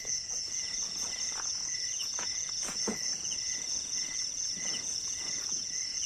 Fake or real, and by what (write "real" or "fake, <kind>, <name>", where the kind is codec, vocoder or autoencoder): fake, vocoder, Vocos